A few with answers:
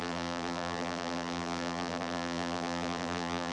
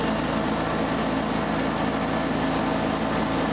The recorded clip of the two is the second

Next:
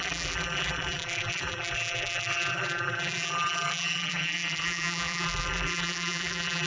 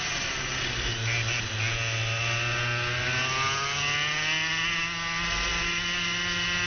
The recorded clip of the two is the second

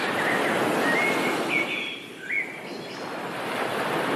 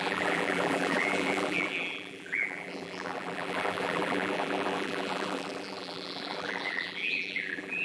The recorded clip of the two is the first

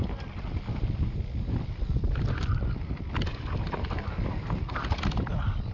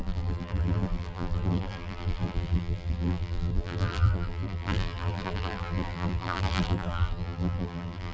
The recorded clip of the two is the first